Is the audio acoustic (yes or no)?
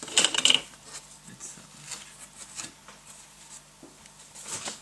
yes